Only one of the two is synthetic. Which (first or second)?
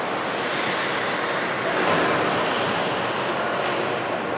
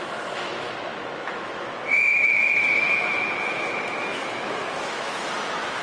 second